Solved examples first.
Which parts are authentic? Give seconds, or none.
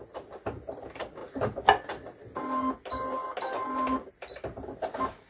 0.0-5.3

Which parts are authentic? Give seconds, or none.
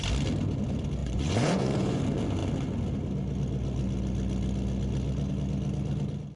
0.0-1.0; 2.0-6.4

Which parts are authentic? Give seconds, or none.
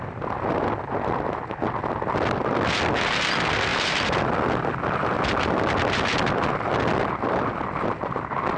0.0-8.6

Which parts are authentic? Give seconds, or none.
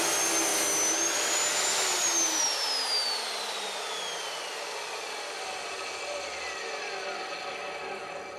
0.0-8.4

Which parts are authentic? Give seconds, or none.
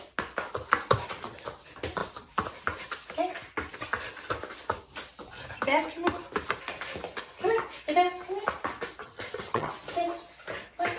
0.0-9.0; 9.7-11.0